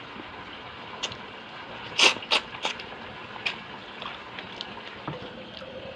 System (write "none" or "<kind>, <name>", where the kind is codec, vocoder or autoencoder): none